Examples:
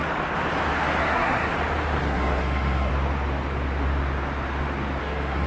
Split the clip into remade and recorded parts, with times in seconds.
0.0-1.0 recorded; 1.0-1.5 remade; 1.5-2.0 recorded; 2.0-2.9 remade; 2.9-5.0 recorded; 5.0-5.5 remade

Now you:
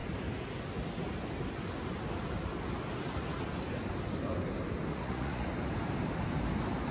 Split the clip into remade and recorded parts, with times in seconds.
0.0-4.9 recorded; 4.9-5.5 remade; 5.5-6.9 recorded

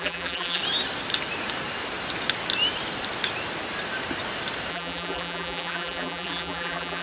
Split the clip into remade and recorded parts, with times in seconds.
0.0-0.6 remade; 0.6-4.7 recorded; 4.7-7.0 remade

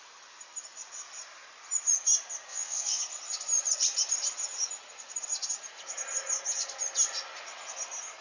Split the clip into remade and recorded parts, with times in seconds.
0.0-2.5 recorded; 2.5-3.0 remade; 3.0-8.2 recorded